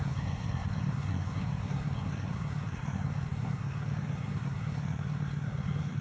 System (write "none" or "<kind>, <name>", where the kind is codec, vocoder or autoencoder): codec, SNAC